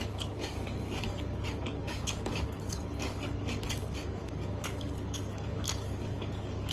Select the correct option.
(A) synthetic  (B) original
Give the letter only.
A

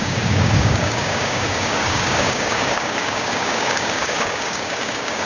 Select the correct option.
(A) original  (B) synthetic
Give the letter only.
B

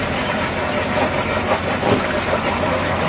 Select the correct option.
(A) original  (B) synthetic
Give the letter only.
A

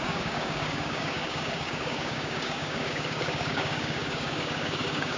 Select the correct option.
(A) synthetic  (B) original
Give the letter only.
A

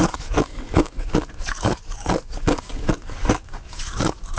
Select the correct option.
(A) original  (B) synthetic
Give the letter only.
B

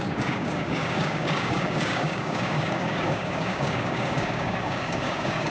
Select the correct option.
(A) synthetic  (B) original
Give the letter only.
A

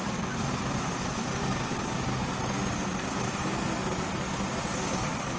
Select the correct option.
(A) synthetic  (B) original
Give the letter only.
B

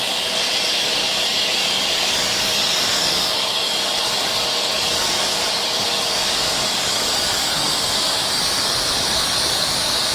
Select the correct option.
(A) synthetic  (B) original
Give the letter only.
A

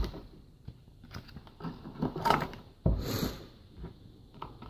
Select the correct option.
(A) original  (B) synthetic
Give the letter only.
A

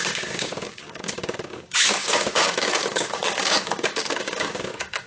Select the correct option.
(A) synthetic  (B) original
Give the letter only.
A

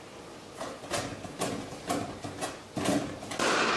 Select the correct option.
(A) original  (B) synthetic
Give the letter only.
A